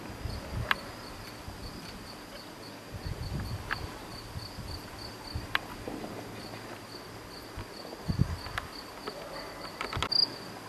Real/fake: real